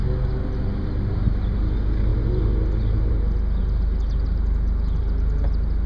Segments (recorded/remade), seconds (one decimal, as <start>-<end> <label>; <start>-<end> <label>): 0.0-5.9 recorded